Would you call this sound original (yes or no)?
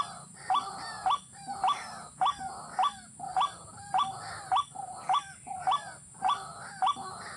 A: yes